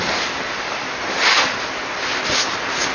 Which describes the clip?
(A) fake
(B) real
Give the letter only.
B